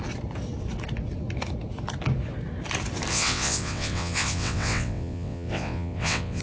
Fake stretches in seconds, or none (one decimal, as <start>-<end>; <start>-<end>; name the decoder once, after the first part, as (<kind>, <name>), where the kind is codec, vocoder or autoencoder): 3.1-6.4 (vocoder, WaveNeXt)